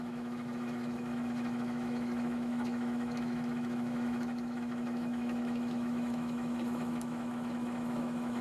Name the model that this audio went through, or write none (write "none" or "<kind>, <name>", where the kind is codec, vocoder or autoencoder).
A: autoencoder, DAC-VAE